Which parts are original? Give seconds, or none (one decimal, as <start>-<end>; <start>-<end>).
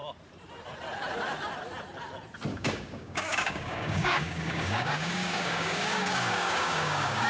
0.0-2.5